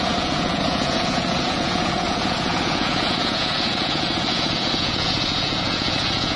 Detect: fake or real fake